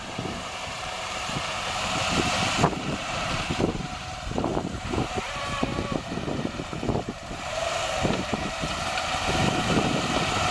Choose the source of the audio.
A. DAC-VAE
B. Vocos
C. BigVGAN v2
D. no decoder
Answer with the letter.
C